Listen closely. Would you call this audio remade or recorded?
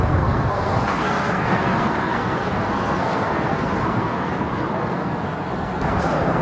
remade